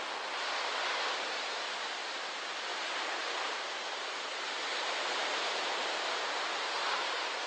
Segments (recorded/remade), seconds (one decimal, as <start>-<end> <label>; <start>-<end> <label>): 0.0-2.7 recorded; 2.7-7.5 remade